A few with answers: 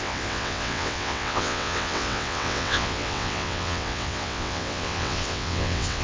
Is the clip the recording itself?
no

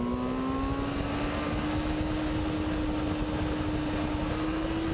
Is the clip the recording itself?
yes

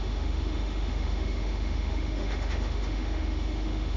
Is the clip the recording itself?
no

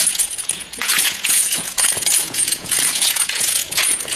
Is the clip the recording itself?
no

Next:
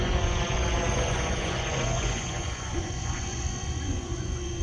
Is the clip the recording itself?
no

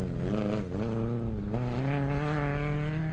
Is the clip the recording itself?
yes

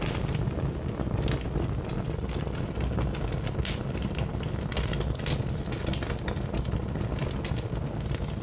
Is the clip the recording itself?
yes